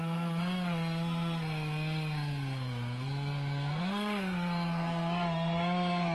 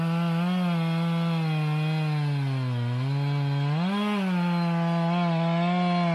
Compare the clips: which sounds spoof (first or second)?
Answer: first